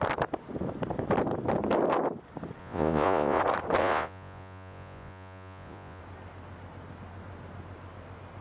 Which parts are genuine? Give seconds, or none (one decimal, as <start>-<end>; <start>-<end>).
0.0-2.6; 3.4-3.8; 6.0-8.4